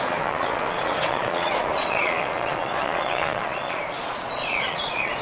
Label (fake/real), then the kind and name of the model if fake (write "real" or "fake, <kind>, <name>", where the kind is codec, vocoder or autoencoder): fake, vocoder, Vocos